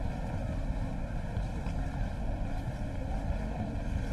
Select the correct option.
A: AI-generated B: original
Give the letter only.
B